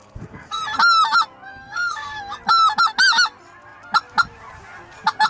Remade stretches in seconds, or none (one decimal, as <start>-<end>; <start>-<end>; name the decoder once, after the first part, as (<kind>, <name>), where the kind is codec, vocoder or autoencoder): 0.0-0.6 (codec, SNAC); 1.5-2.2